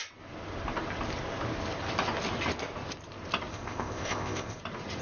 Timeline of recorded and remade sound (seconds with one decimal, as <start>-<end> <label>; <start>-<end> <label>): 0.0-3.5 recorded; 3.5-4.6 remade; 4.6-5.0 recorded